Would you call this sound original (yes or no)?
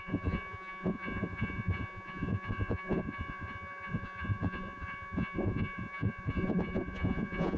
no